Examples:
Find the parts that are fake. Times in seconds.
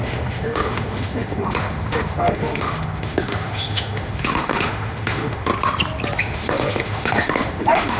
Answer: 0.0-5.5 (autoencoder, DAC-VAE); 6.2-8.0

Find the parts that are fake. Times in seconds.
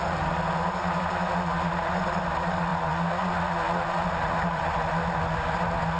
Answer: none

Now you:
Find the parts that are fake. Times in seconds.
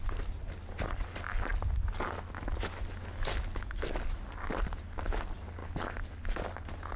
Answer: none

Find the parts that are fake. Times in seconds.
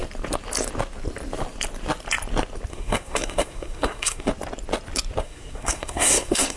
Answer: 2.7-4.3 (codec, SNAC); 5.2-6.6